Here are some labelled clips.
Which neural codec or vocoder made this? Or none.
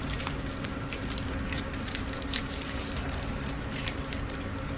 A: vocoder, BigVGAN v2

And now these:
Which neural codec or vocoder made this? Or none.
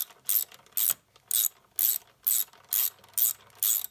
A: none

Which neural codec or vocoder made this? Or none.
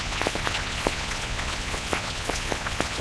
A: vocoder, Vocos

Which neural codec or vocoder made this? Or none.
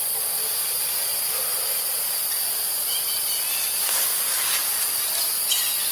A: none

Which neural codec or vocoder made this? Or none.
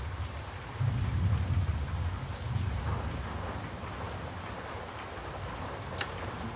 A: none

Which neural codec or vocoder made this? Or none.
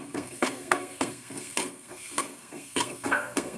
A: codec, SNAC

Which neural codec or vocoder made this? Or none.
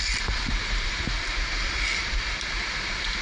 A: none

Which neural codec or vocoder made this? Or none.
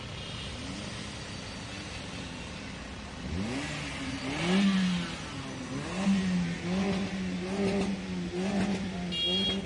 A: none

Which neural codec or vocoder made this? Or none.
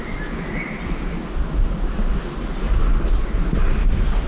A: none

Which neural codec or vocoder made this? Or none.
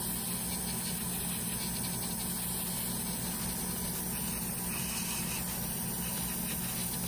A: none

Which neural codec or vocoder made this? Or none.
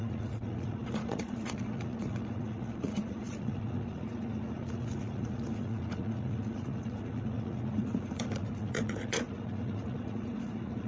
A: vocoder, Vocos